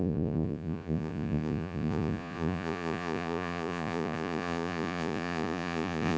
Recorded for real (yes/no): no